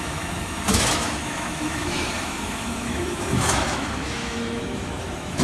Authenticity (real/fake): fake